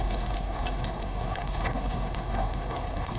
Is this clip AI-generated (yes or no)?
yes